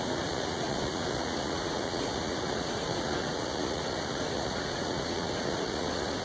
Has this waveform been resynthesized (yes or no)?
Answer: yes